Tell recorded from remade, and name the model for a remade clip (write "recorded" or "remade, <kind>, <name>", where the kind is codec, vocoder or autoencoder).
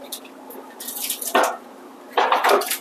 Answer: recorded